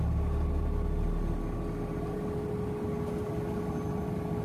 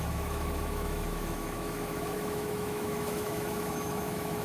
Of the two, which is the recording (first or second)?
first